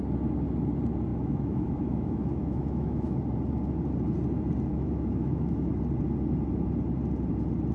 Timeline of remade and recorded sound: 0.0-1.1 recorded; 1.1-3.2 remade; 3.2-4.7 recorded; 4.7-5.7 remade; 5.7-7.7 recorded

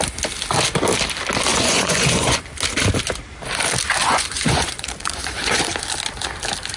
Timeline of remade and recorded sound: 0.0-1.5 recorded; 1.5-2.6 remade; 2.6-4.0 recorded; 4.0-5.7 remade; 5.7-6.8 recorded

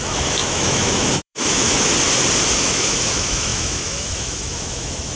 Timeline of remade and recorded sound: 0.0-1.9 remade; 1.9-2.6 recorded; 2.6-5.2 remade

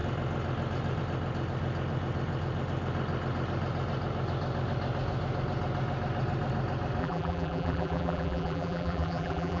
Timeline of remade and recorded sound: 0.0-7.0 recorded; 7.0-9.6 remade

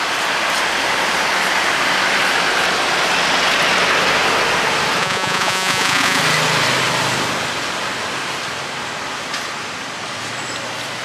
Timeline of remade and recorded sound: 0.0-5.0 recorded; 5.0-6.2 remade; 6.2-11.0 recorded

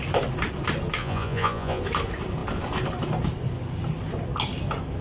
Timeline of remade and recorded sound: 0.0-1.0 recorded; 1.0-1.8 remade; 1.8-5.0 recorded

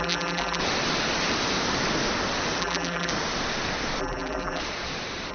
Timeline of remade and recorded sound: 0.0-0.6 remade; 0.6-2.6 recorded; 2.6-3.1 remade; 3.1-4.0 recorded; 4.0-4.6 remade; 4.6-5.3 recorded

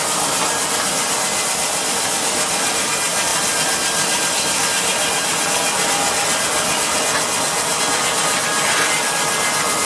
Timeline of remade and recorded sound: 0.0-9.9 recorded